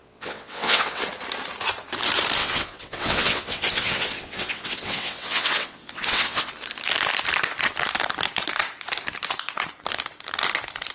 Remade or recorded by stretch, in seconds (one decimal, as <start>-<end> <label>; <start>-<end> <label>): 0.0-1.0 remade; 1.0-2.4 recorded; 2.4-6.5 remade; 6.5-10.9 recorded